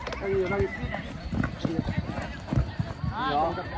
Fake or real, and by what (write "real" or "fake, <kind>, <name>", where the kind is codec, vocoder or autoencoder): real